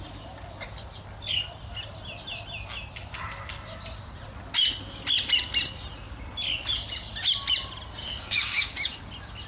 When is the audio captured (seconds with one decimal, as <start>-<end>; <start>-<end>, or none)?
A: 0.0-8.0; 9.0-9.5